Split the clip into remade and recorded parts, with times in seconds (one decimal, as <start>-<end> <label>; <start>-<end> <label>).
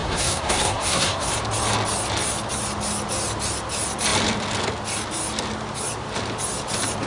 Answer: 0.0-1.3 remade; 1.3-7.1 recorded